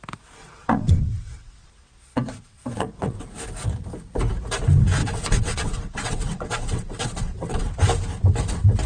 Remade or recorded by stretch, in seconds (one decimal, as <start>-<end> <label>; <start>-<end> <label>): 0.0-0.4 recorded; 0.4-3.2 remade; 3.2-5.0 recorded; 5.0-7.6 remade; 7.6-8.9 recorded